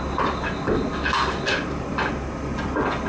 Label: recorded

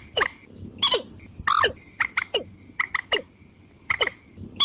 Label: recorded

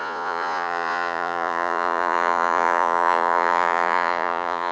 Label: remade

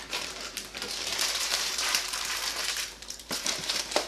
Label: remade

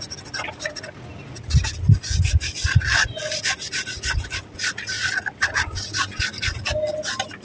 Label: recorded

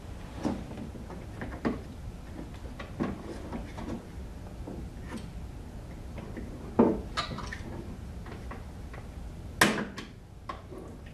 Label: recorded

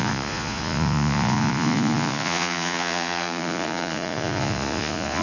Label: remade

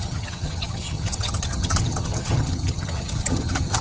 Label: remade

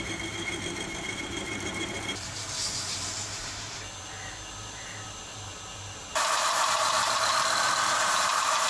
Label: remade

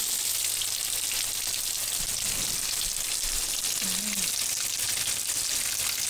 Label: recorded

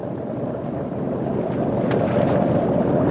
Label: recorded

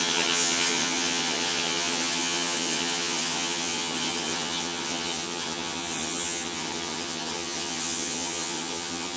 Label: remade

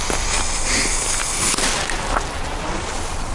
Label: recorded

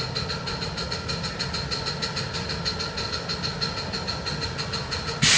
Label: recorded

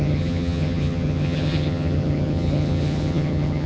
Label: remade